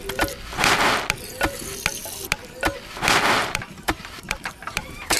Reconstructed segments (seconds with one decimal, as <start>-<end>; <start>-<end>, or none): 3.4-5.2